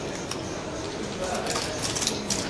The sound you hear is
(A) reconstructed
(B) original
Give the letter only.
B